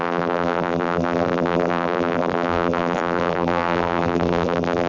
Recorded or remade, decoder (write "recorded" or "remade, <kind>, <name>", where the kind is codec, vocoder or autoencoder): remade, vocoder, BigVGAN v2